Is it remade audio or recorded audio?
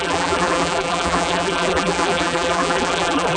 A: remade